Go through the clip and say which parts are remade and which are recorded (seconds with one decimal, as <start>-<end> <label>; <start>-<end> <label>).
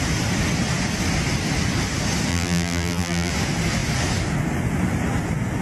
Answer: 0.0-2.3 recorded; 2.3-3.3 remade; 3.3-5.6 recorded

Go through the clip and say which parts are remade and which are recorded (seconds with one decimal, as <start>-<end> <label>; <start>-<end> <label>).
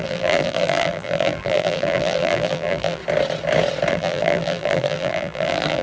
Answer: 0.0-3.0 remade; 3.0-3.9 recorded; 3.9-5.8 remade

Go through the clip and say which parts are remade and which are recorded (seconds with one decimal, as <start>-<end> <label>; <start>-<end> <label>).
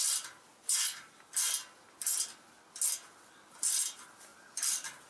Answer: 0.0-1.6 remade; 1.6-3.1 recorded; 3.1-5.1 remade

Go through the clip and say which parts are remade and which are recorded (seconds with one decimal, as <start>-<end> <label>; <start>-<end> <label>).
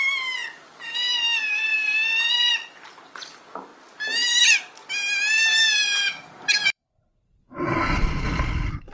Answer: 0.0-3.7 remade; 3.7-5.3 recorded; 5.3-8.9 remade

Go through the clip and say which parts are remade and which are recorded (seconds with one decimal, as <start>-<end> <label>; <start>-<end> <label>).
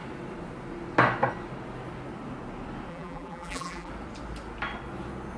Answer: 0.0-2.9 recorded; 2.9-3.9 remade; 3.9-5.4 recorded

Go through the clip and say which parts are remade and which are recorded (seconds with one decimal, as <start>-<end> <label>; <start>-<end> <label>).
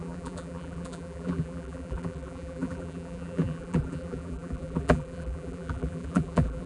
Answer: 0.0-6.7 remade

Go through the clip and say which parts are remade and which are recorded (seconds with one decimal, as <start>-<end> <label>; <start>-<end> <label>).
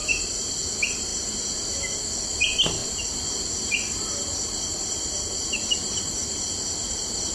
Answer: 0.0-0.5 remade; 0.5-1.1 recorded; 1.1-1.8 remade; 1.8-2.8 recorded; 2.8-7.3 remade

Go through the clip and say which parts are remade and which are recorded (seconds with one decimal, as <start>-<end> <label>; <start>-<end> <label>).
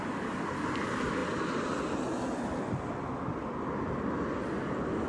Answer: 0.0-5.1 recorded